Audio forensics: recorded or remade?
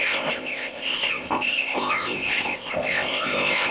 remade